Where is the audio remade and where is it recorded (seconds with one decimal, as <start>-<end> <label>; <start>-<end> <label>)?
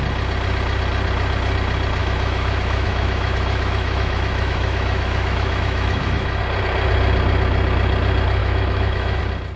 0.0-2.0 recorded; 2.0-6.4 remade; 6.4-8.4 recorded; 8.4-9.2 remade; 9.2-9.6 recorded